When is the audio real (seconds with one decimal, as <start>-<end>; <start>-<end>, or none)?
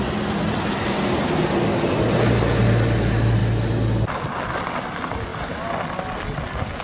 0.0-6.8